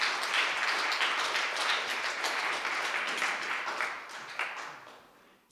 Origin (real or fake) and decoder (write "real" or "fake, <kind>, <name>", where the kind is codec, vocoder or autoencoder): real